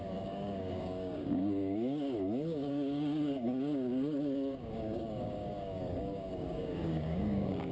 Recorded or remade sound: remade